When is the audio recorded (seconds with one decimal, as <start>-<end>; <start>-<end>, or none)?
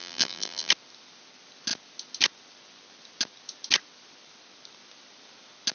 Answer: 0.7-5.7